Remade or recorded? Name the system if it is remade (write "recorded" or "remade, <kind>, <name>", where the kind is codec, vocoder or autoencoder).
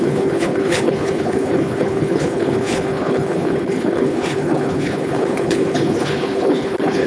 remade, codec, HILCodec